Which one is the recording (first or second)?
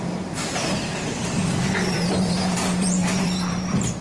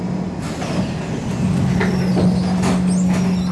second